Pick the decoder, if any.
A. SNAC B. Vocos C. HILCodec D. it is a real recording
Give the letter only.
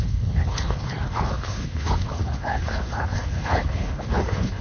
C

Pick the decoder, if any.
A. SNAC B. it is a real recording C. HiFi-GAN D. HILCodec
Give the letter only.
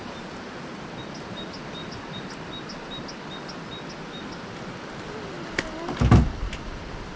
B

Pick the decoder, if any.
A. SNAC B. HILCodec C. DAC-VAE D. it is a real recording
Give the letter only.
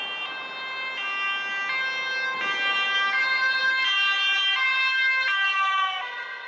D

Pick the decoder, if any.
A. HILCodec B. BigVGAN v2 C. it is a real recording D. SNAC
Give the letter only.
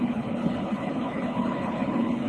A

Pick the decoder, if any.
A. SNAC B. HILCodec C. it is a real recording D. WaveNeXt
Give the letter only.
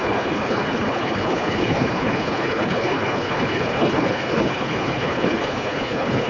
B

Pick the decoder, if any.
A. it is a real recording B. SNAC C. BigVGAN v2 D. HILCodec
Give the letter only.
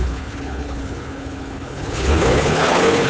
D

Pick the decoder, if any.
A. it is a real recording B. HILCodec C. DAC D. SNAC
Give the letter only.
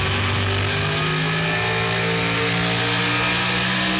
A